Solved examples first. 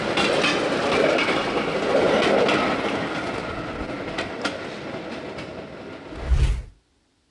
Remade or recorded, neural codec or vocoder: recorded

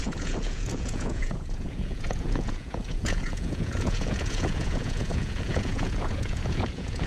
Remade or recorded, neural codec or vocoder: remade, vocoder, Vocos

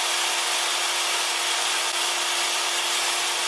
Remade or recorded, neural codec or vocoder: recorded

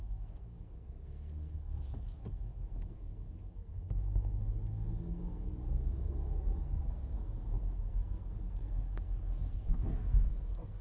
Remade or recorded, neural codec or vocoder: remade, codec, SNAC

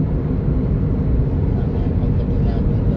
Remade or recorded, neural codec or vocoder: recorded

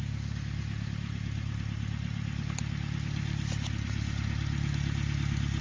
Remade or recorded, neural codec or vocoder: recorded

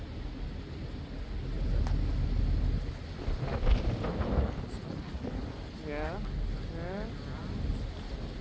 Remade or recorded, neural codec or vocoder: recorded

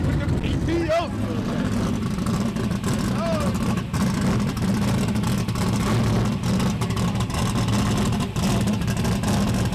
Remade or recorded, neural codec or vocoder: recorded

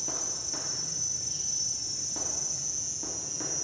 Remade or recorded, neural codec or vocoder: remade, vocoder, Vocos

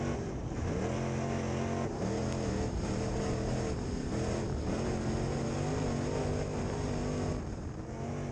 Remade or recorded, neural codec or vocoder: recorded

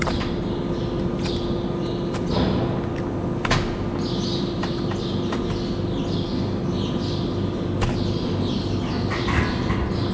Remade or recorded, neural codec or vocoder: recorded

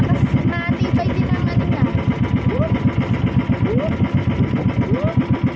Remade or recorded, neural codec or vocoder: recorded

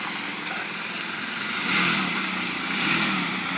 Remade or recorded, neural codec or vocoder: recorded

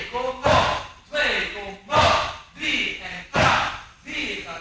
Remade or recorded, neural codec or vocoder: recorded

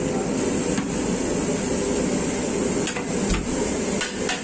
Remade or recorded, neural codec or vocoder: recorded